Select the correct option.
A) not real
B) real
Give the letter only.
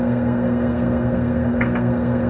A